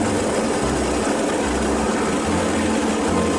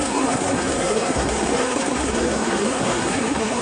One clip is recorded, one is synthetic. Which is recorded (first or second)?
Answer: first